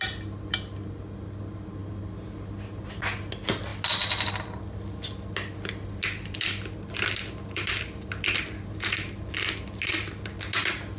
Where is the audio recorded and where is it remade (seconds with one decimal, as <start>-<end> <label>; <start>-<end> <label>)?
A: 0.0-11.0 recorded

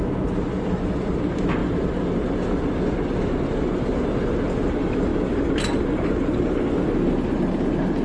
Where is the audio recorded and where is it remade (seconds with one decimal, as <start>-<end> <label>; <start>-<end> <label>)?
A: 0.0-8.0 recorded

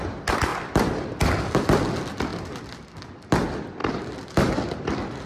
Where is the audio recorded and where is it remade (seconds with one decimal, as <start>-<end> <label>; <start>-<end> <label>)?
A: 0.0-2.3 recorded; 2.3-2.9 remade; 2.9-3.8 recorded; 3.8-5.3 remade